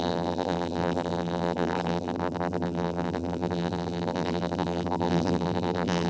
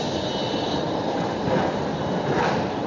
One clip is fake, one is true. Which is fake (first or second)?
first